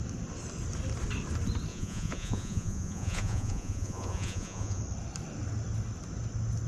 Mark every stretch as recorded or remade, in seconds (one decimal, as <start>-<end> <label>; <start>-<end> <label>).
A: 0.0-1.7 recorded; 1.7-4.8 remade; 4.8-6.7 recorded